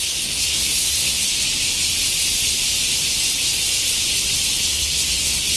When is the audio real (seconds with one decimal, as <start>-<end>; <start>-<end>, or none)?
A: 1.3-4.7